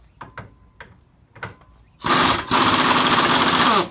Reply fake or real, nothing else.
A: real